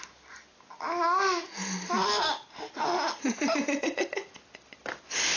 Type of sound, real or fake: real